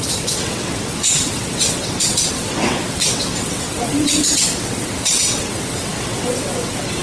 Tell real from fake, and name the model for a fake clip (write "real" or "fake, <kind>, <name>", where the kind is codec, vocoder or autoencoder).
fake, vocoder, WaveNeXt